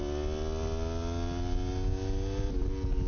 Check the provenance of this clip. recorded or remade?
recorded